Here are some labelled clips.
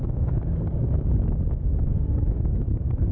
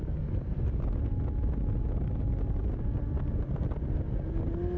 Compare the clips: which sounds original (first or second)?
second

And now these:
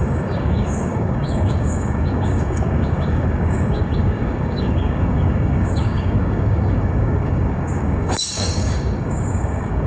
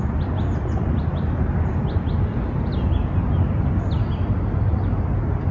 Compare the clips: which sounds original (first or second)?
second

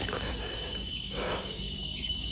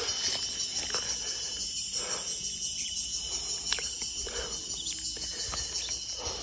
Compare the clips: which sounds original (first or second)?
second